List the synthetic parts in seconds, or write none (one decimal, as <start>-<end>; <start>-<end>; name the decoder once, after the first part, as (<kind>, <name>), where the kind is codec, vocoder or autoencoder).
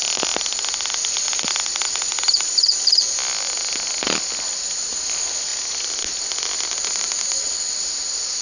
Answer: none